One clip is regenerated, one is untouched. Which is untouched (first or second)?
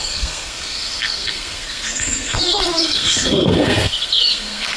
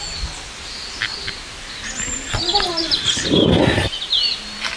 second